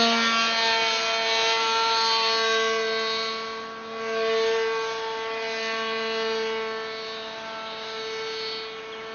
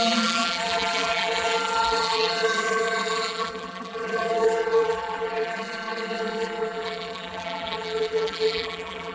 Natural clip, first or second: first